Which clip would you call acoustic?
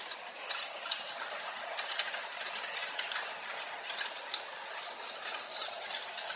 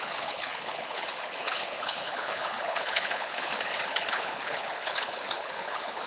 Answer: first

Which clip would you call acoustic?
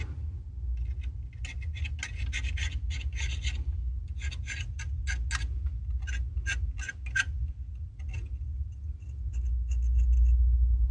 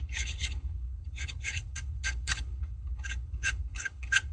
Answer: first